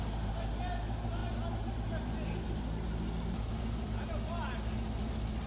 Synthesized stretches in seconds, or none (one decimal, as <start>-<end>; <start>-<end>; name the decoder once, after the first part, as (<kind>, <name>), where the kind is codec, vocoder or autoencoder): none

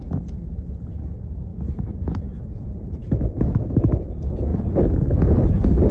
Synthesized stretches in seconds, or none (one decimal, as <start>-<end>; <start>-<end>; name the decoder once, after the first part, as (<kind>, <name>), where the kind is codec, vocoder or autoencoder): 1.5-2.4 (autoencoder, DAC-VAE); 3.0-3.8

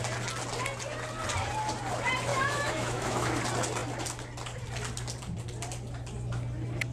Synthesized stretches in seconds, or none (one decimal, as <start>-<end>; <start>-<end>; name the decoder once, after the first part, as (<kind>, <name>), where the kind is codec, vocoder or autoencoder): 2.3-3.4 (autoencoder, DAC-VAE)

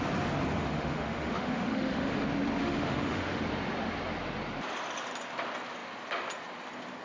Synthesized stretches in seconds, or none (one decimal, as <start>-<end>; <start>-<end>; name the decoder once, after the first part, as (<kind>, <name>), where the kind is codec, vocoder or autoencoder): 0.5-2.2 (autoencoder, DAC-VAE); 2.6-3.4

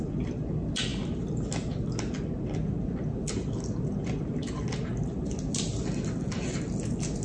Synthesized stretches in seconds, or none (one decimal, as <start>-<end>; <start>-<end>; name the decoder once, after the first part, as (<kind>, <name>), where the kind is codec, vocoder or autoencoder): none

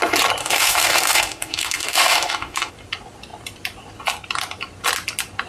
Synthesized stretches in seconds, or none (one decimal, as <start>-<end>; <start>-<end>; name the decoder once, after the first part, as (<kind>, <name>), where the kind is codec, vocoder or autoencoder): 0.4-2.7 (autoencoder, DAC-VAE)

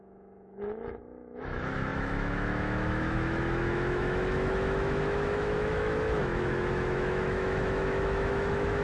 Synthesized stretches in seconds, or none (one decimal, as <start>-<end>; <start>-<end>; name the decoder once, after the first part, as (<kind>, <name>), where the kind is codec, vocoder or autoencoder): 0.0-8.8 (autoencoder, DAC-VAE)

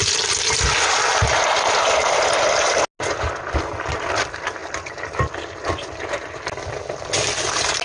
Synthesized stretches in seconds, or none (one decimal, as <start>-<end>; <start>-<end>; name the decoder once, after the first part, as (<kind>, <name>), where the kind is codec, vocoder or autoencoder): none